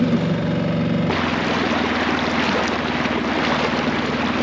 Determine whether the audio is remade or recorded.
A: recorded